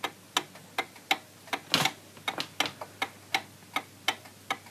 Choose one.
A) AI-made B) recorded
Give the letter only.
B